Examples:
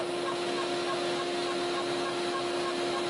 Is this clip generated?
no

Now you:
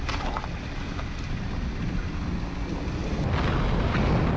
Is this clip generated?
no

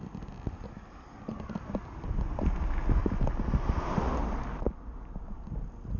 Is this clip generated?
no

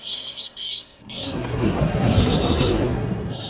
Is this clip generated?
yes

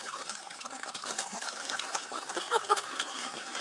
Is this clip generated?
yes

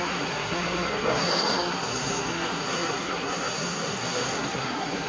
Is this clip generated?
yes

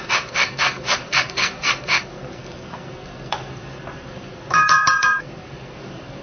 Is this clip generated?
yes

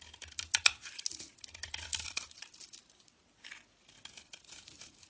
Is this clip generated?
no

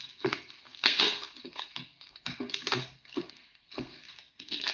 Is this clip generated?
yes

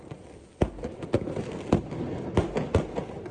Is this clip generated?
no